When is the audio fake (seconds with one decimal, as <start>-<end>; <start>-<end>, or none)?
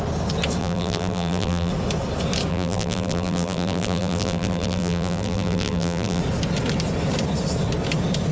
0.6-1.7; 2.5-6.2